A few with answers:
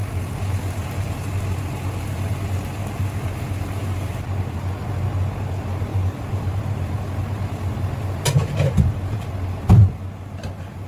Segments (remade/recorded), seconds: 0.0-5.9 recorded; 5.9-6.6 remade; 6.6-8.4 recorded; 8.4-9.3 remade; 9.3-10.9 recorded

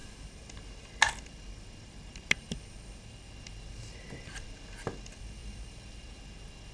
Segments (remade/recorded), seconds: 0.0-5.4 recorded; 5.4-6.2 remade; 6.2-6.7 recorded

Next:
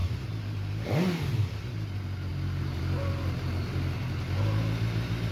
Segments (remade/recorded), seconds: 0.0-0.7 remade; 0.7-2.3 recorded; 2.3-2.8 remade; 2.8-5.3 recorded

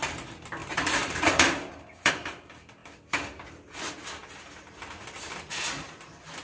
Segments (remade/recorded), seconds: 0.0-0.6 recorded; 0.6-2.1 remade; 2.1-6.4 recorded